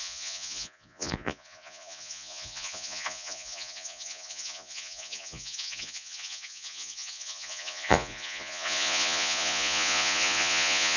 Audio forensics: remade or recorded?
remade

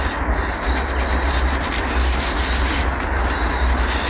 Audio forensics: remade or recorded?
recorded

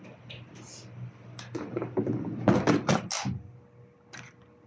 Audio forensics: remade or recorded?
recorded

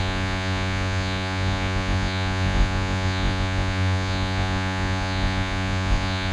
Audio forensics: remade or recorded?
remade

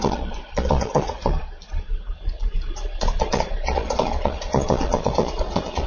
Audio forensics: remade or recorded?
remade